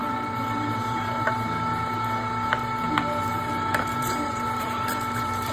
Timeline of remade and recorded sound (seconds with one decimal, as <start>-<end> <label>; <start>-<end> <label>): 0.0-3.3 recorded; 3.3-5.5 remade